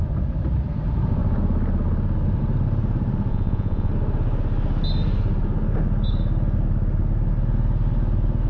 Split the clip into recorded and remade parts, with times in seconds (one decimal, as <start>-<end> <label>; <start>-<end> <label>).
0.0-3.3 recorded; 3.3-3.9 remade; 3.9-8.5 recorded